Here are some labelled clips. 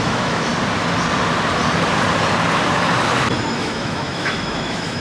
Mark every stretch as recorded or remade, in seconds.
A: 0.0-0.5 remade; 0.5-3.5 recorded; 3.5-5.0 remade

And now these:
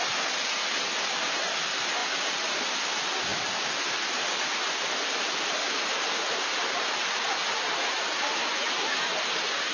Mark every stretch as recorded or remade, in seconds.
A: 0.0-9.7 recorded

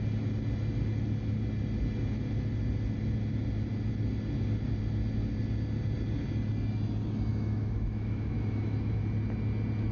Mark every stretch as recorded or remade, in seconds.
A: 0.0-7.3 recorded; 7.3-9.0 remade; 9.0-9.9 recorded